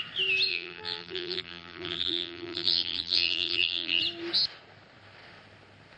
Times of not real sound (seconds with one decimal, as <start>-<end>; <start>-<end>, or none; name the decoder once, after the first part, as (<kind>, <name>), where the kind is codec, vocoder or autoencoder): 0.5-4.0 (vocoder, BigVGAN v2)